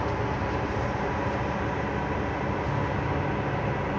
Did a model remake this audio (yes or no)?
no